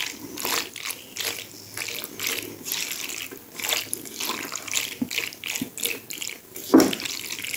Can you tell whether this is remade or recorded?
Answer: recorded